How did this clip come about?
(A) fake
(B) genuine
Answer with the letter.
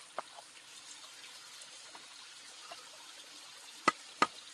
B